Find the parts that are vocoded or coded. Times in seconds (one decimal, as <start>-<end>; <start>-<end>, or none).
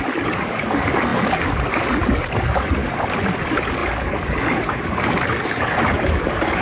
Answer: 0.0-2.8; 3.4-6.6